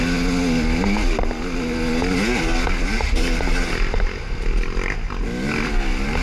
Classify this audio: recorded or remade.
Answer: recorded